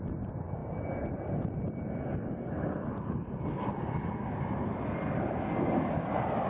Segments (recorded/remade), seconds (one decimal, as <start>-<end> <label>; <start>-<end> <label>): 0.0-6.5 recorded